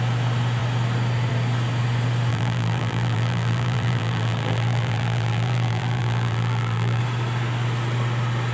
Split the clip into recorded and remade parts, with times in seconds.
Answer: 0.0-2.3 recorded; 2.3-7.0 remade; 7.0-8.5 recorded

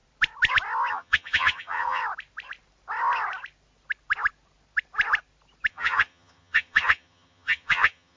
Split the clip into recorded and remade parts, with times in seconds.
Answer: 0.0-0.9 recorded; 0.9-2.0 remade; 2.0-5.7 recorded; 5.7-8.2 remade

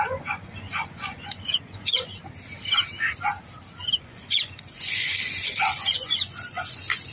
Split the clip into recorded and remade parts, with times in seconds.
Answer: 0.0-2.1 remade; 2.1-4.0 recorded; 4.0-7.1 remade

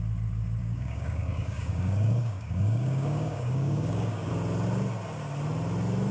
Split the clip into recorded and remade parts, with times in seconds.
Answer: 0.0-0.6 recorded; 0.6-4.3 remade; 4.3-6.1 recorded

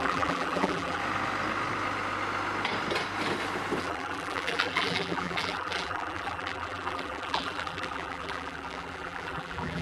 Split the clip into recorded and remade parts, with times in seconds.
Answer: 0.0-1.0 remade; 1.0-3.8 recorded; 3.8-9.8 remade

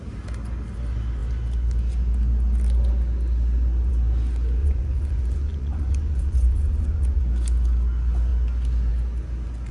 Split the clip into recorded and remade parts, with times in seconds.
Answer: 0.0-4.6 recorded; 4.6-7.2 remade; 7.2-9.7 recorded